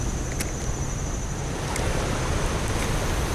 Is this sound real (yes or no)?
yes